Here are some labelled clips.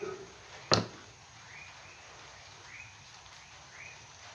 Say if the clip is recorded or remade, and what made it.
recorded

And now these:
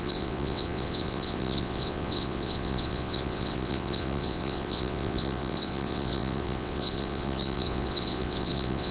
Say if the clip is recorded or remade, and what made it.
remade, vocoder, WaveNeXt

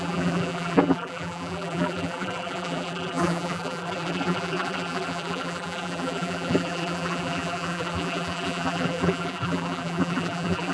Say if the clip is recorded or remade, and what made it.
remade, vocoder, BigVGAN v2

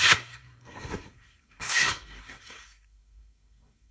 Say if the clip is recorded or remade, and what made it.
remade, codec, SNAC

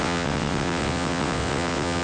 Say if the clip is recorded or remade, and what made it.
remade, vocoder, WaveNeXt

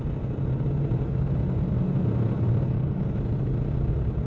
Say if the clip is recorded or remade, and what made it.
recorded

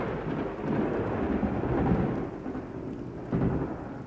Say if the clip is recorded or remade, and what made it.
recorded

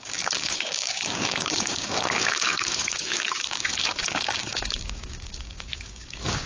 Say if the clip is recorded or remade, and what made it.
remade, codec, DAC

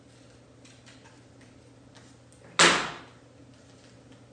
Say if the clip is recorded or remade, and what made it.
recorded